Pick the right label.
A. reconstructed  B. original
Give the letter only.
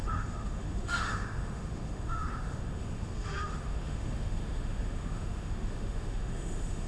A